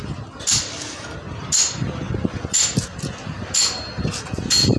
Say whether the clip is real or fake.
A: real